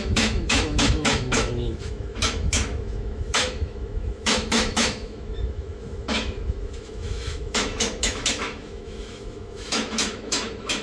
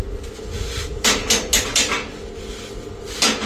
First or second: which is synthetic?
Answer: first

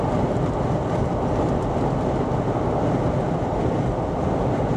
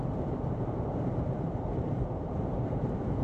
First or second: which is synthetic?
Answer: second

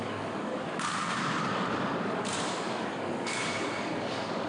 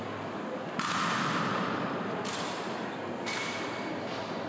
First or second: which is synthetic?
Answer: first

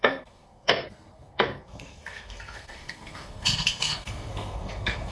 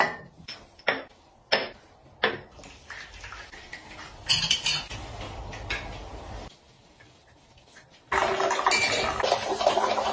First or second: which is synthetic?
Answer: first